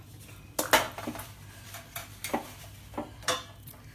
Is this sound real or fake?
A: real